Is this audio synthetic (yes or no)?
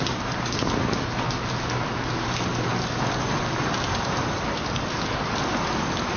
no